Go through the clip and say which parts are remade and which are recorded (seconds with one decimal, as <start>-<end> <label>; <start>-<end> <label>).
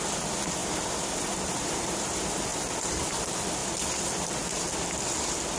0.0-5.6 recorded